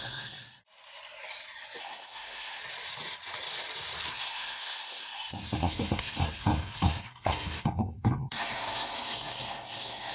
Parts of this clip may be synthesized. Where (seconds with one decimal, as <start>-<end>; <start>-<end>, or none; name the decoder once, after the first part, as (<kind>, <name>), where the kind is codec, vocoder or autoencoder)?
0.0-0.6 (codec, SNAC); 1.8-2.6; 4.1-10.1